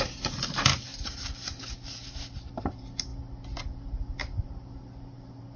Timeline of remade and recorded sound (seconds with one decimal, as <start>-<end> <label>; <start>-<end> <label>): 0.0-3.1 remade; 3.1-3.7 recorded; 3.7-5.6 remade

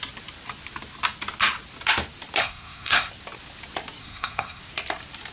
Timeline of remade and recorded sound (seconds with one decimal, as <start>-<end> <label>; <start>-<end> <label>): 0.0-2.4 recorded; 2.4-3.1 remade; 3.1-4.0 recorded; 4.0-4.6 remade; 4.6-5.3 recorded

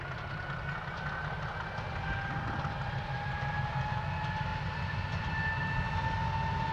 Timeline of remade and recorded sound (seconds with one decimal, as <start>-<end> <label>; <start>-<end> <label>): 0.0-6.7 recorded

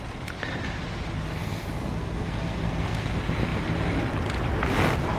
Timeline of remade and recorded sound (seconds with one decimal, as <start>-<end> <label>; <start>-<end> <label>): 0.0-1.4 recorded; 1.4-3.1 remade; 3.1-5.2 recorded

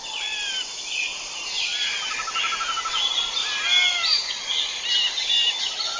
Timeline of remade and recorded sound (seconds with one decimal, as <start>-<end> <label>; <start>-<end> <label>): 0.0-6.0 recorded

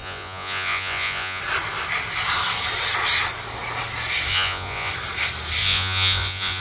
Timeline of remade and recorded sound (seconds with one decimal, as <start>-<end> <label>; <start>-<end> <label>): 0.0-1.4 remade; 1.4-4.3 recorded; 4.3-4.9 remade; 4.9-5.6 recorded; 5.6-6.6 remade